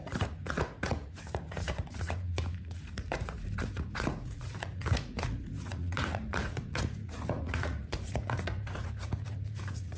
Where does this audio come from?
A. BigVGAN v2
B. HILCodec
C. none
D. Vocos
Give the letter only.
D